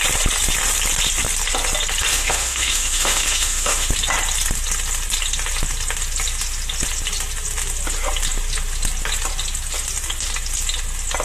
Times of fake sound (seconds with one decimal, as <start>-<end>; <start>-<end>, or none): 2.1-3.9

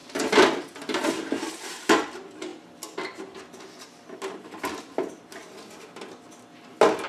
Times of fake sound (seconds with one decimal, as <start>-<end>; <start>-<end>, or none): none

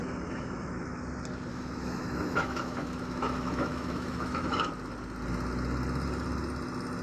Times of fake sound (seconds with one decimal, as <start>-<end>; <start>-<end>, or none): 0.0-1.0; 1.5-4.7

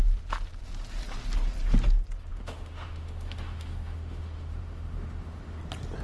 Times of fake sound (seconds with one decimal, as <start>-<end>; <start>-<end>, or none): 2.3-5.6

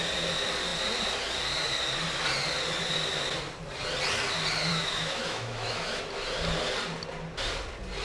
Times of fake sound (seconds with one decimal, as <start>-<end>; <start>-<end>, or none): 4.7-6.0

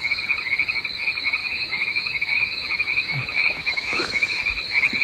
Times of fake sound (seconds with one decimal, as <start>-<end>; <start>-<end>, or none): 1.4-4.4